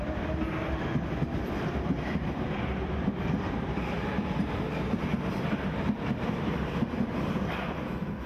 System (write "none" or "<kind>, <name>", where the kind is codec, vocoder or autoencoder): vocoder, BigVGAN v2